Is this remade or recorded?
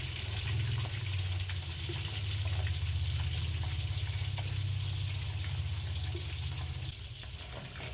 recorded